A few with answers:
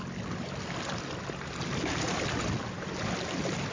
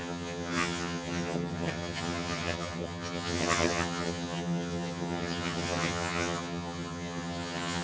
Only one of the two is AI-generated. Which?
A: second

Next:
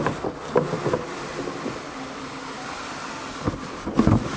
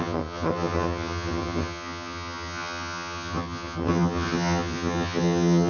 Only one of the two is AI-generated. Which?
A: second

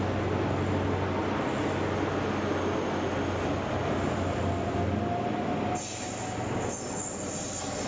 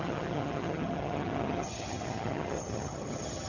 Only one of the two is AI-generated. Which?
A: second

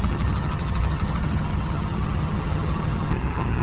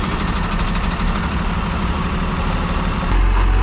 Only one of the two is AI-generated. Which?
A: first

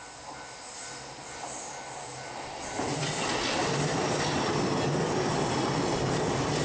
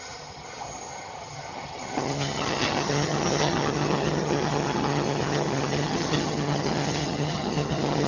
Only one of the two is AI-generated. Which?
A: second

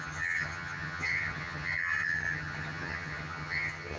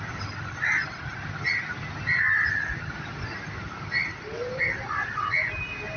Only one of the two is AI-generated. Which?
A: first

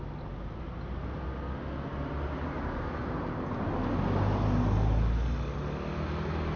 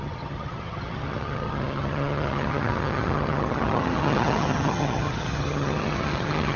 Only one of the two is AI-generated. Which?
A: second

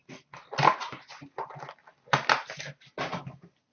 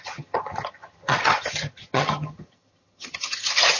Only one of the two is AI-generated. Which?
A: second